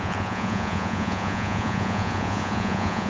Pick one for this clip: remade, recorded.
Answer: remade